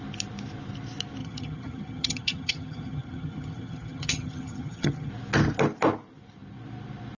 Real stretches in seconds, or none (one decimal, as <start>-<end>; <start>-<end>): 0.0-1.2; 5.1-7.2